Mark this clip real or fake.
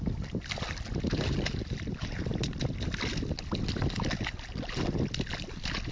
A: real